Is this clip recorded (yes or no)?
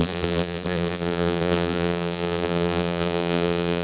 no